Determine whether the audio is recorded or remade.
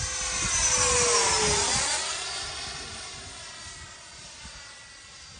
recorded